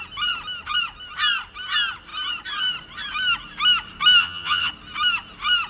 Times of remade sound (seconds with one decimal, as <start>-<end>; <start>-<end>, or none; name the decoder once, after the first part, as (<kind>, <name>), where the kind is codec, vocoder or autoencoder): 4.2-4.7 (vocoder, HiFi-GAN)